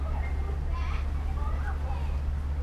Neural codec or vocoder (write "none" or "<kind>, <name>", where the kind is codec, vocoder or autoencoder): none